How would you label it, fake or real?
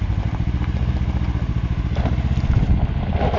real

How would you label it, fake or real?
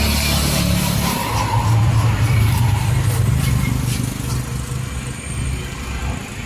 real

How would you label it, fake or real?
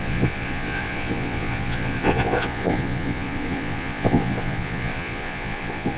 fake